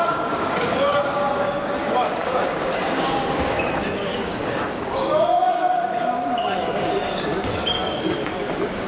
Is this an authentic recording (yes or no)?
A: no